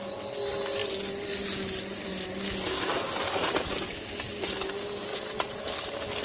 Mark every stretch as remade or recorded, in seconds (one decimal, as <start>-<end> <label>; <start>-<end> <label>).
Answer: 0.0-5.1 recorded; 5.1-5.6 remade; 5.6-6.2 recorded